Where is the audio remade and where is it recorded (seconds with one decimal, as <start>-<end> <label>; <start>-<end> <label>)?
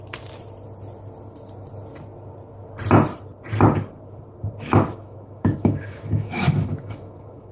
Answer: 0.0-5.0 recorded; 5.0-7.5 remade